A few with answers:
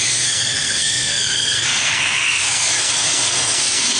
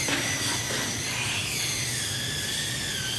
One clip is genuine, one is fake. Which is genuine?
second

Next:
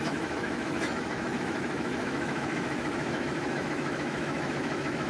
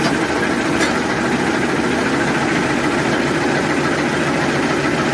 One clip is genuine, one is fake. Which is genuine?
second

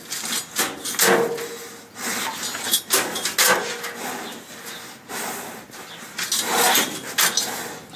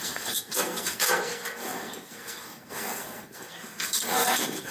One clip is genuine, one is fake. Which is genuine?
first